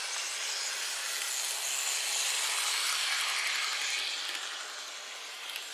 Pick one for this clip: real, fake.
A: real